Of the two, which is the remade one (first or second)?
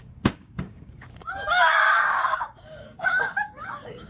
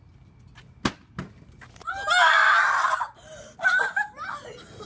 first